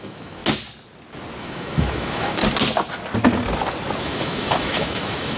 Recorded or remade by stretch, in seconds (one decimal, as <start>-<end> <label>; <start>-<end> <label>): 0.0-0.4 remade; 0.4-1.4 recorded; 1.4-2.4 remade; 2.4-4.0 recorded; 4.0-5.4 remade